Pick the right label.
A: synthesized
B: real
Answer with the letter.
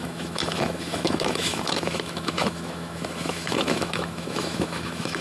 A